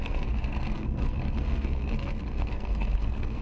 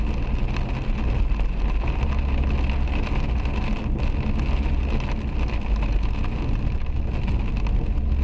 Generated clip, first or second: first